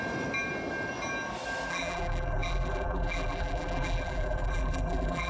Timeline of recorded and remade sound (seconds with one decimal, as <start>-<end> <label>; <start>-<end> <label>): 0.0-1.7 recorded; 1.7-5.3 remade